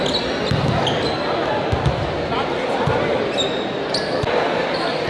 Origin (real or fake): real